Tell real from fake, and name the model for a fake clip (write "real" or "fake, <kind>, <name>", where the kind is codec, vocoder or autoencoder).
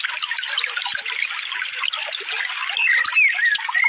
real